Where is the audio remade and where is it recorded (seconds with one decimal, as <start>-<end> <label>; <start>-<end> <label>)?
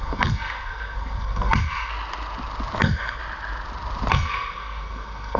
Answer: 0.0-1.9 remade; 1.9-2.8 recorded; 2.8-3.2 remade; 3.2-4.1 recorded; 4.1-5.4 remade